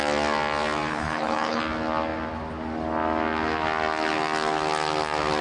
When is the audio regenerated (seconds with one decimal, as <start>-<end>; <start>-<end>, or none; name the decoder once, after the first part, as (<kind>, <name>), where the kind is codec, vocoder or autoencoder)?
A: 0.9-1.6 (codec, HILCodec)